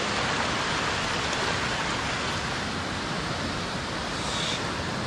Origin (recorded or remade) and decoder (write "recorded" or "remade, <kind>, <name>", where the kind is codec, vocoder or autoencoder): recorded